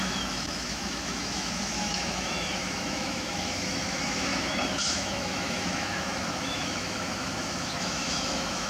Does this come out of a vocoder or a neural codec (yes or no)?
yes